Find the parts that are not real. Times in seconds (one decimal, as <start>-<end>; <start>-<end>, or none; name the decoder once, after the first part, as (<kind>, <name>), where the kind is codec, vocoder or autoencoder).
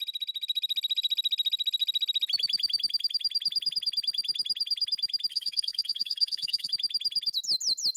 5.3-6.7 (codec, SNAC)